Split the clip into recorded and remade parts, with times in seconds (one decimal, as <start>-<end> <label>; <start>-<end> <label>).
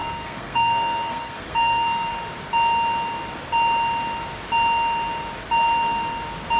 0.0-2.1 remade; 2.1-6.6 recorded